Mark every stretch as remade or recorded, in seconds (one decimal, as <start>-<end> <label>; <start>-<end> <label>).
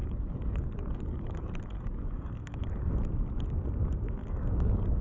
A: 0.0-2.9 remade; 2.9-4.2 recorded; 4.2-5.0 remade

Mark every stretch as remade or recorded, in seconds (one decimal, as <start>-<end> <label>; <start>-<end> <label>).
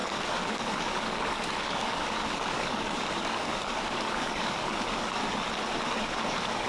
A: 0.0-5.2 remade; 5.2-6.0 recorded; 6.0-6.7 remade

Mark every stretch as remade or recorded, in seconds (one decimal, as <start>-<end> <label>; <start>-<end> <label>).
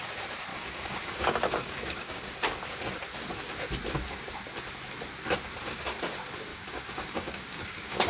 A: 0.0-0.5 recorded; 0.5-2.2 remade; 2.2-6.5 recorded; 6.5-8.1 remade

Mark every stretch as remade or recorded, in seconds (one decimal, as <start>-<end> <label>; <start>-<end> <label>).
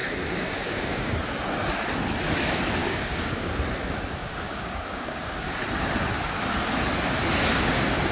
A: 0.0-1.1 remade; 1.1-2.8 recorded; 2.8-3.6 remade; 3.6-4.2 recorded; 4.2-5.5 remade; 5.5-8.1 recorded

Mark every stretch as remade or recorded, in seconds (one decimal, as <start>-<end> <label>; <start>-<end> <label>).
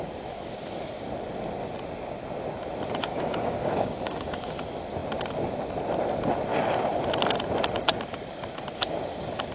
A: 0.0-3.1 recorded; 3.1-4.5 remade; 4.5-9.5 recorded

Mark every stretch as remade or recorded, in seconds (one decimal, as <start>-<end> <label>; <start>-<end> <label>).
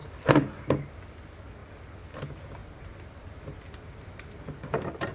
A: 0.0-5.1 recorded